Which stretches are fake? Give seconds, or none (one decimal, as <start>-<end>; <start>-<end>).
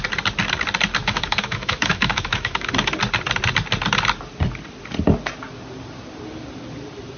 1.0-2.7